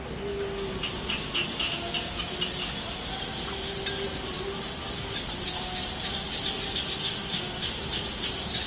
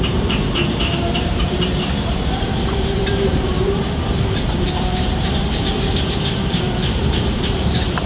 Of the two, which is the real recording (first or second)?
first